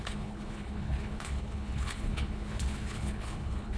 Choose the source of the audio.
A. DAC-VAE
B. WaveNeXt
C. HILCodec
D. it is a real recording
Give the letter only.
C